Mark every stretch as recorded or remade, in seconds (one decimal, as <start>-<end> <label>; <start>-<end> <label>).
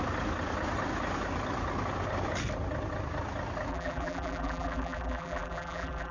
0.0-3.7 recorded; 3.7-6.1 remade